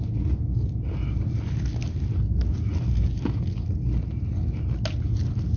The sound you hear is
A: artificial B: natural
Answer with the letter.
B